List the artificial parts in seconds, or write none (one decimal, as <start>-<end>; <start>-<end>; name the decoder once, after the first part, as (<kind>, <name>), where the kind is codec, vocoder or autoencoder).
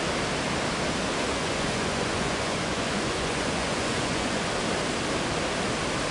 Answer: 1.3-4.5 (vocoder, Vocos)